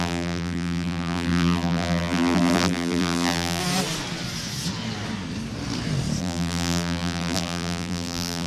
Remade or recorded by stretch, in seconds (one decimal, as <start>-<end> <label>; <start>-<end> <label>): 0.0-3.6 remade; 3.6-6.2 recorded; 6.2-8.5 remade